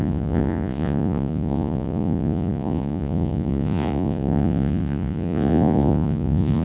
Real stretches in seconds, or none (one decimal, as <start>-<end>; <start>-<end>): none